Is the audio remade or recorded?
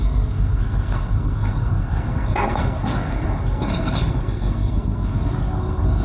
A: remade